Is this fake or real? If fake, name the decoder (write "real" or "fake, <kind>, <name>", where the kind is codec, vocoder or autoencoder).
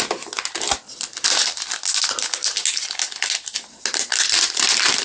real